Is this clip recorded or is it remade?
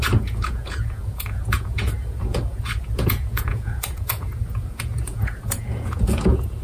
remade